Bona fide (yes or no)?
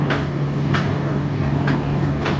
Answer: no